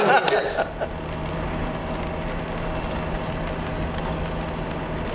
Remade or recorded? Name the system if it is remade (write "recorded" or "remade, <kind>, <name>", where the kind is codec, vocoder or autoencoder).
recorded